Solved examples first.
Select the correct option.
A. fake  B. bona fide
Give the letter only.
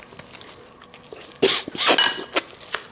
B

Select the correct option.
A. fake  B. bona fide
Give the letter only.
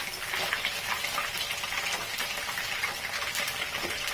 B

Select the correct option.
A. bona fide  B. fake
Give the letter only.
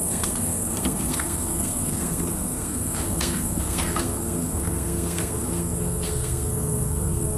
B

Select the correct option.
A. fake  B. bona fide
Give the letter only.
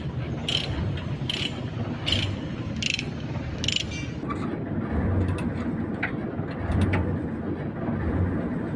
B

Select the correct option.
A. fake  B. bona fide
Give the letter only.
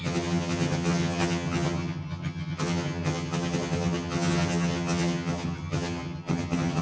A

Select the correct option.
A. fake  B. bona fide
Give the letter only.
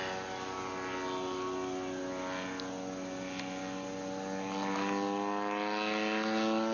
B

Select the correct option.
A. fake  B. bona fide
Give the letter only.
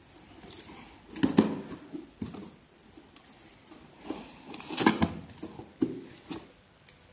B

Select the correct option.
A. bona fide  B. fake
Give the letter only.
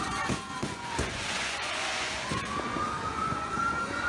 B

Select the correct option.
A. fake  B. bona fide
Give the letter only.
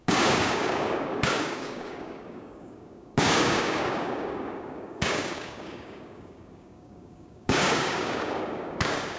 A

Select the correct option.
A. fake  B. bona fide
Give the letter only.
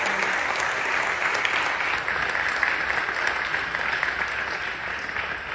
B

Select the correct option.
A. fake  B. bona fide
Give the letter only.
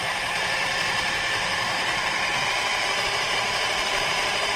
A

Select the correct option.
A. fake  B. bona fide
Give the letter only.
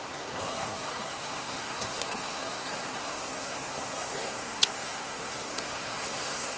A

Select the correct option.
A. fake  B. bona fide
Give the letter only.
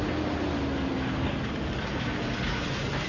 B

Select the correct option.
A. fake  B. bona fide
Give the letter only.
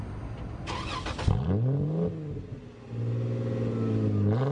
B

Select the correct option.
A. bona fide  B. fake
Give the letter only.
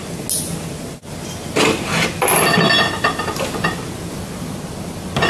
A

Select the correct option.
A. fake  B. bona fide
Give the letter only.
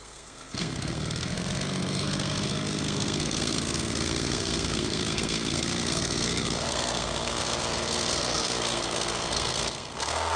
A